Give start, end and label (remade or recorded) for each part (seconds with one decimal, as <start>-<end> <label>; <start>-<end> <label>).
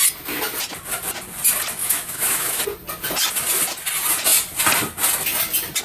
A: 0.0-1.8 recorded; 1.8-2.6 remade; 2.6-5.8 recorded